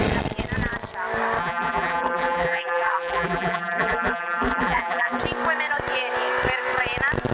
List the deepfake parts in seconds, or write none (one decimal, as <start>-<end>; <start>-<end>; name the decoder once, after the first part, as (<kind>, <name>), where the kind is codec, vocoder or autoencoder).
1.4-5.2 (vocoder, BigVGAN v2)